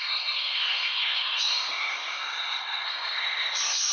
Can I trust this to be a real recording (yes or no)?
no